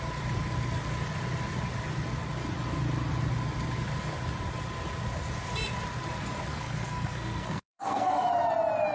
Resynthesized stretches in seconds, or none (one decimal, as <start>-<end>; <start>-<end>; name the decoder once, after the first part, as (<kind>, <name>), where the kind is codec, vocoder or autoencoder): 6.5-8.3 (codec, SNAC)